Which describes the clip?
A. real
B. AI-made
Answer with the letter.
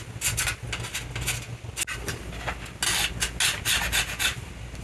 A